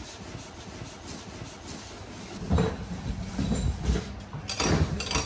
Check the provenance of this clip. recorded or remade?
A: recorded